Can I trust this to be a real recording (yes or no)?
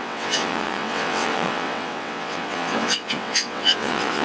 no